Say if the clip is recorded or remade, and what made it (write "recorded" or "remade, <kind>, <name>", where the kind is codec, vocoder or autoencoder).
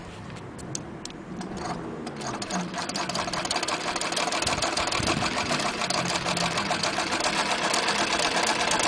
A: recorded